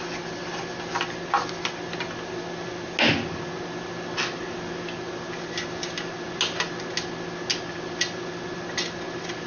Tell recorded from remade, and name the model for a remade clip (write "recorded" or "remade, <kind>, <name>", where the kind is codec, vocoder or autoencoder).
recorded